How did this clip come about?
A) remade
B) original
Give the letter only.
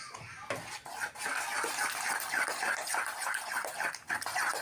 A